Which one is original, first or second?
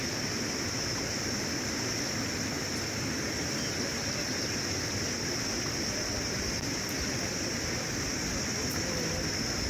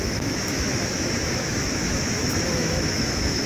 first